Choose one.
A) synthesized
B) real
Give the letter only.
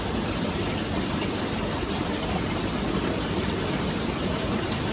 A